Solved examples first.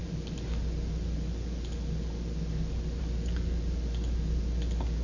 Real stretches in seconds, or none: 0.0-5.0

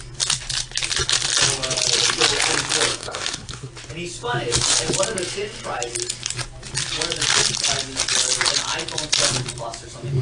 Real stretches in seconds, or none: 0.0-2.9; 3.7-10.2

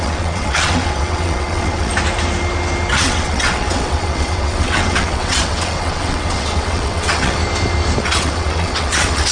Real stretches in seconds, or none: 1.9-2.9; 7.4-8.0

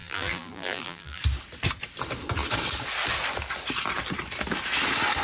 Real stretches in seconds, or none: 1.2-5.2

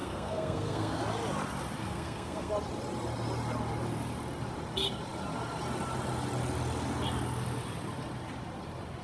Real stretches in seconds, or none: 1.0-1.8; 2.5-9.0

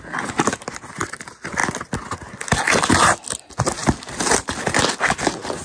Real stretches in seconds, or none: 0.0-5.6